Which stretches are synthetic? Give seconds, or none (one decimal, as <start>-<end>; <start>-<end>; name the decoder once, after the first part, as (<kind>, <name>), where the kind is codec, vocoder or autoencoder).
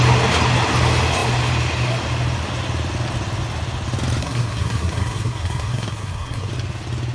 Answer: 4.2-6.5 (codec, SNAC)